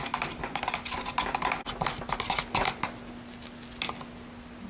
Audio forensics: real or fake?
real